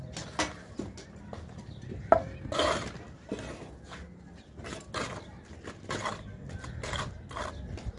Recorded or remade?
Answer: recorded